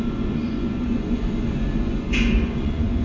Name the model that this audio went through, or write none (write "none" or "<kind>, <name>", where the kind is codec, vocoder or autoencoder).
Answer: vocoder, Vocos